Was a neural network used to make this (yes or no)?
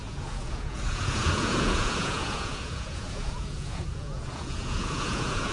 yes